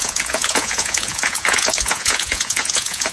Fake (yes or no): yes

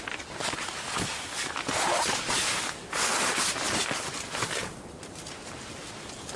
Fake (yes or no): no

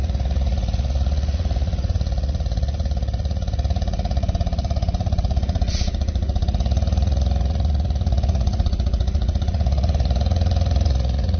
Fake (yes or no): yes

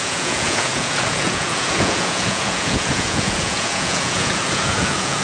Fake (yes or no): yes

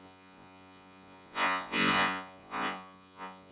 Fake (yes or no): yes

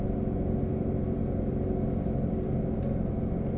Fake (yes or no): no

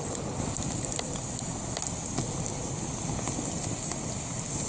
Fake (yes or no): no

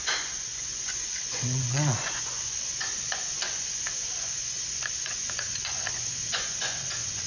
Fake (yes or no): yes